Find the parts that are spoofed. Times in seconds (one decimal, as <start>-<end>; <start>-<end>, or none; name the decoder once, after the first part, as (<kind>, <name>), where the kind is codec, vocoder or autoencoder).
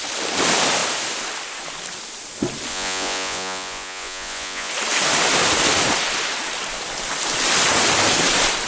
2.7-4.7 (vocoder, Vocos)